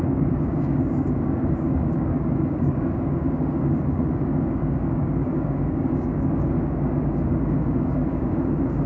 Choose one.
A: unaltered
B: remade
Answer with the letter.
B